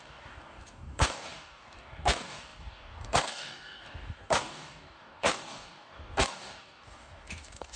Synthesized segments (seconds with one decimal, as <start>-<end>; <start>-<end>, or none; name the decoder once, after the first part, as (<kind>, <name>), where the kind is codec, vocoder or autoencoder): 0.0-7.8 (codec, DAC)

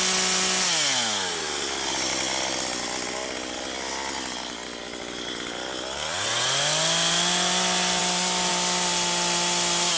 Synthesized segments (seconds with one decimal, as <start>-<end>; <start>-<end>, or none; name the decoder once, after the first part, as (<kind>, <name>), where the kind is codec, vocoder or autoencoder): none